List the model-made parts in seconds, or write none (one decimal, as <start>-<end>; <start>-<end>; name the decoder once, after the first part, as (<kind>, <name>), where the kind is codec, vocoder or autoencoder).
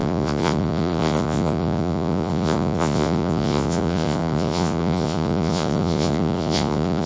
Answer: 0.0-7.1 (vocoder, Vocos)